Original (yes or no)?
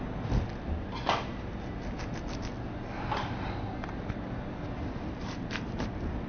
yes